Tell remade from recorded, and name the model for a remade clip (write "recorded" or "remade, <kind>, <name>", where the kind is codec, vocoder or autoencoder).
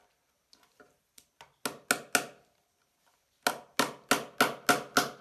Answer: recorded